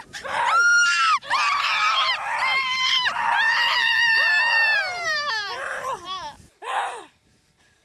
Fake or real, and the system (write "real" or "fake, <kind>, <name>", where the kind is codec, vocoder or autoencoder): fake, vocoder, BigVGAN v2